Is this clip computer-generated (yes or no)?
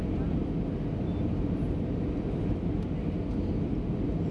no